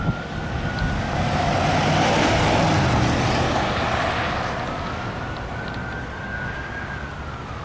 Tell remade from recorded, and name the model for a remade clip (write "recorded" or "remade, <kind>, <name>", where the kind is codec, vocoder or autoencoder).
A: recorded